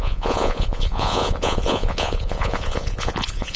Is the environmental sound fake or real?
fake